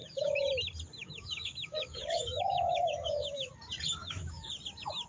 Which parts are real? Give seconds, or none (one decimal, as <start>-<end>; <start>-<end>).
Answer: 0.5-1.0; 3.5-4.0; 4.5-5.1